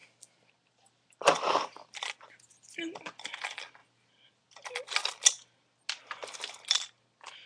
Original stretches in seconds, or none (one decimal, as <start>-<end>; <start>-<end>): 0.0-7.5